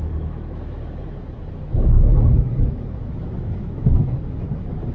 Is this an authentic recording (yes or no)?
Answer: no